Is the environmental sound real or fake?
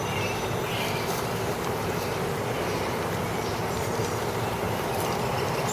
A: fake